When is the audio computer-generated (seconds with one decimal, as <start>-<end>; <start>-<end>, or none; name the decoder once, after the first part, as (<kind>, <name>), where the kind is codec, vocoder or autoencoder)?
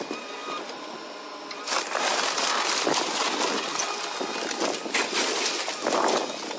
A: 0.4-1.0 (vocoder, BigVGAN v2)